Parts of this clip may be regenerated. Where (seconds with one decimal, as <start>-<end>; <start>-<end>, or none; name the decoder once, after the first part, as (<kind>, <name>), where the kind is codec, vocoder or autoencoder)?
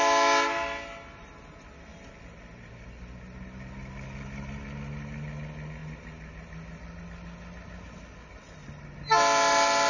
none